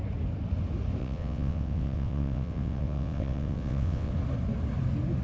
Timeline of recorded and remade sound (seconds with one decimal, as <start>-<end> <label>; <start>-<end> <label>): 0.0-1.0 recorded; 1.0-4.1 remade; 4.1-5.2 recorded